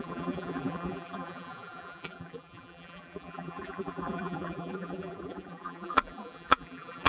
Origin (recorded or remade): remade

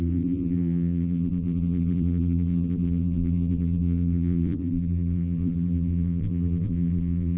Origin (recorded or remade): remade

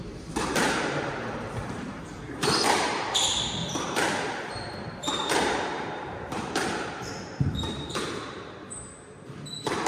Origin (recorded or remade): remade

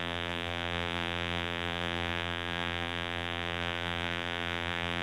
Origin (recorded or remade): remade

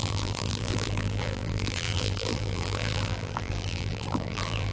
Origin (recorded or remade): remade